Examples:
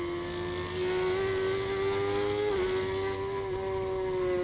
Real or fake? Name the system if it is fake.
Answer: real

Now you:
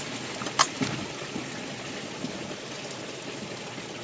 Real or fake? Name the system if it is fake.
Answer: real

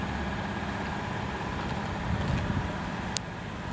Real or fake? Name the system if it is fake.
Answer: real